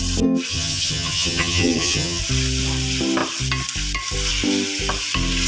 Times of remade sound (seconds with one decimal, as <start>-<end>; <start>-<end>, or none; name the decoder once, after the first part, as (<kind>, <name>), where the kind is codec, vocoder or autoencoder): 0.5-2.2 (vocoder, HiFi-GAN)